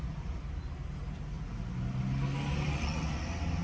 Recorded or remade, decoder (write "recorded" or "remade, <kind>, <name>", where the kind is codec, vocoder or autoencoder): recorded